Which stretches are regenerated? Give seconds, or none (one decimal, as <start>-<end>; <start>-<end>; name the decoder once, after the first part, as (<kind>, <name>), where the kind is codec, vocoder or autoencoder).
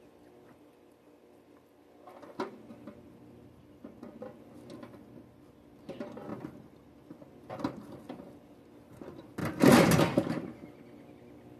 none